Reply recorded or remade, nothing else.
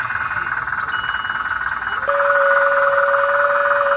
recorded